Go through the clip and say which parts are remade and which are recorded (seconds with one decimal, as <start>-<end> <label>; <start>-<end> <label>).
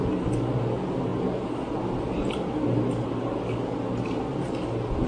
0.0-5.1 recorded